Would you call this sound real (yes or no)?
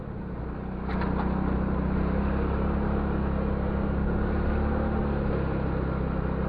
yes